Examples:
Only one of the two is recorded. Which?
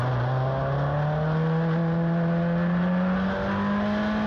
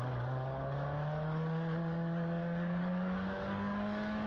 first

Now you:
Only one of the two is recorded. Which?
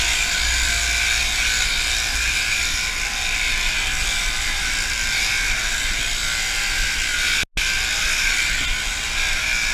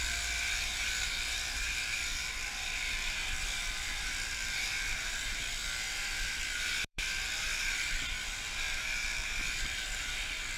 first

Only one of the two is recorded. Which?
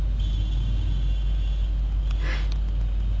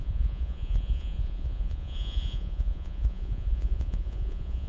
first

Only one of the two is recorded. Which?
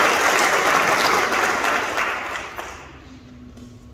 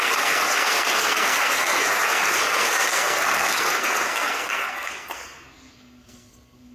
first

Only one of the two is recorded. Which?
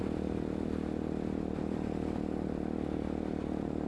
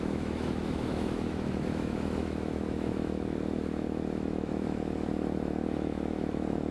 first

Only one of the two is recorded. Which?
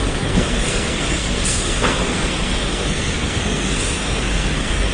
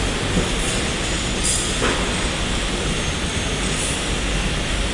second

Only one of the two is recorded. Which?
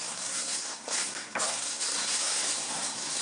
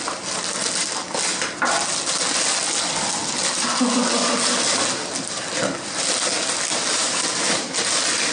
second